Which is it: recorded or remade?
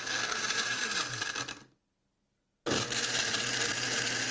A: recorded